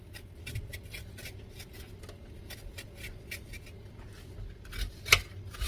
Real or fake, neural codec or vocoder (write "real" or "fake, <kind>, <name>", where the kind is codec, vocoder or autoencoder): real